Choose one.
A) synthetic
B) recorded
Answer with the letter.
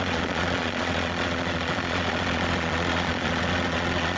A